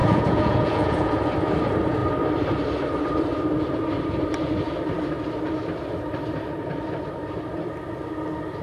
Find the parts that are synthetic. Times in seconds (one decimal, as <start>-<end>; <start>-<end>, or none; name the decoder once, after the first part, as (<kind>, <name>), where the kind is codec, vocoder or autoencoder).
0.0-1.1 (vocoder, Vocos)